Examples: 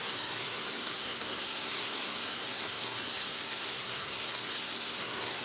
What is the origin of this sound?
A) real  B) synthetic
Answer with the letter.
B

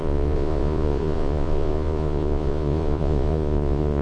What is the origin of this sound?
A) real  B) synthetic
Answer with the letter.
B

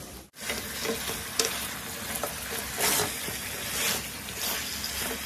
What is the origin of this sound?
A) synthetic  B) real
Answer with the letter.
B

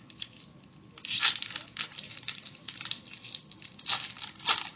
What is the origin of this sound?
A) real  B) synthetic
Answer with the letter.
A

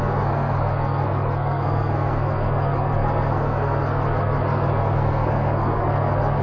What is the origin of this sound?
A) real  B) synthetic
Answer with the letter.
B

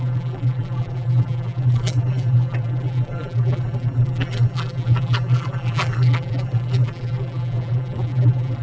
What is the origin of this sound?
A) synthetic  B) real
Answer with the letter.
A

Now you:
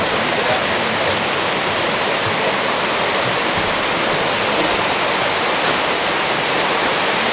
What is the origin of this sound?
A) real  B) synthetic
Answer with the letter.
A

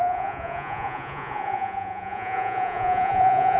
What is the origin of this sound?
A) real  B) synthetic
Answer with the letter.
B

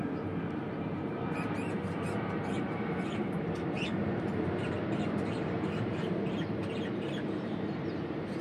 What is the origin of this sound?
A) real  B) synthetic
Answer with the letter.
B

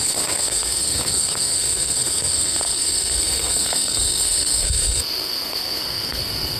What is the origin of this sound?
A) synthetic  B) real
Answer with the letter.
A